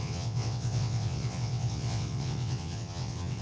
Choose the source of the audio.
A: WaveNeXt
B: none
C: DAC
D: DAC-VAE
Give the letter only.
A